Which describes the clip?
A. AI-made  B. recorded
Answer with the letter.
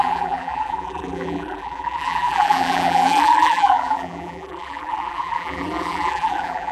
A